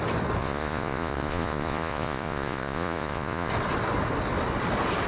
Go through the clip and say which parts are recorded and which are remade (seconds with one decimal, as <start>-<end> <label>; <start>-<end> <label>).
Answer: 0.0-0.4 recorded; 0.4-3.5 remade; 3.5-5.1 recorded